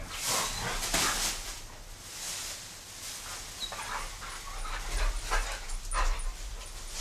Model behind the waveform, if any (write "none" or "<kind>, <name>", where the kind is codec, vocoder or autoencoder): none